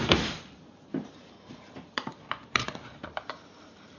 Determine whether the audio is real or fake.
fake